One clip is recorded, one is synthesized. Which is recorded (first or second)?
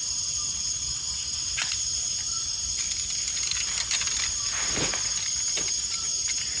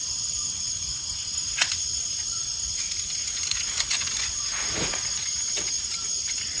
first